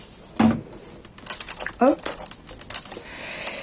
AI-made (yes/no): no